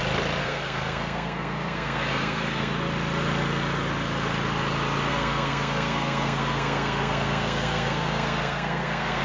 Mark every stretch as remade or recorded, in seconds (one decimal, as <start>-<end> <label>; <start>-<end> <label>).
0.0-0.4 recorded; 0.4-2.7 remade; 2.7-5.1 recorded; 5.1-9.2 remade